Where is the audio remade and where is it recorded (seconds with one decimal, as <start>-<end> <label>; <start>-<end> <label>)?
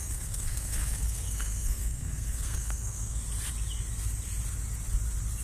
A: 0.0-3.2 remade; 3.2-5.4 recorded